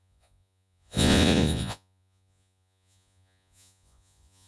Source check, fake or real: fake